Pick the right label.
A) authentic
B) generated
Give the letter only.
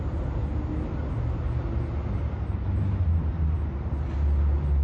A